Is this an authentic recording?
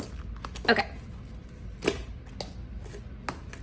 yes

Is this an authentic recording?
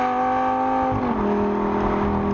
yes